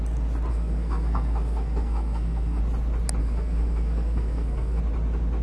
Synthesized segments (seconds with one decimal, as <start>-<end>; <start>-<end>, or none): 0.5-2.6; 3.2-4.8